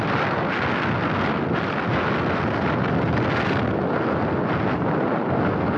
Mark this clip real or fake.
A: real